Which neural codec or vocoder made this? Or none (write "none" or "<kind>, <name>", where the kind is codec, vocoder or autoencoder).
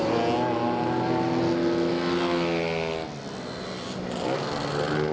none